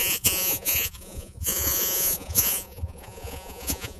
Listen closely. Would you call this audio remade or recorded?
remade